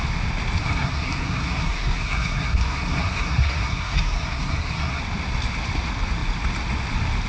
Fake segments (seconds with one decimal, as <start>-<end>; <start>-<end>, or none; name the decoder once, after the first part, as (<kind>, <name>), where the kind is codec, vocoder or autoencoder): 0.6-5.0 (codec, SNAC)